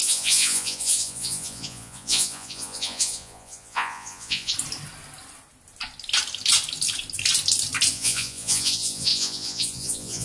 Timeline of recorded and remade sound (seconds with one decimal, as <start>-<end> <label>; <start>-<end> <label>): 0.0-4.5 remade; 4.5-7.9 recorded; 7.9-10.2 remade